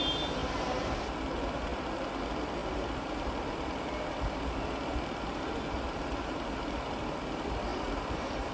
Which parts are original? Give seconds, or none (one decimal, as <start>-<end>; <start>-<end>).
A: 0.0-0.4; 1.0-7.7